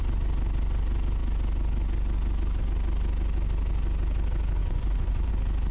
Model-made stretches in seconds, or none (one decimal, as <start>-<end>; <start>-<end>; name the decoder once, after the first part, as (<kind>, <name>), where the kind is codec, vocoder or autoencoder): 4.6-5.3 (vocoder, Vocos)